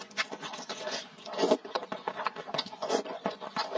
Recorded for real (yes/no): no